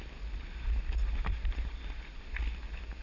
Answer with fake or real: real